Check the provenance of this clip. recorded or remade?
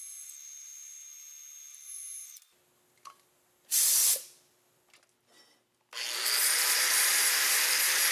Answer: recorded